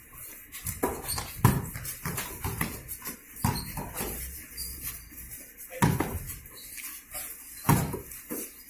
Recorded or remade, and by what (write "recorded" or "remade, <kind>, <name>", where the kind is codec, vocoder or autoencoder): recorded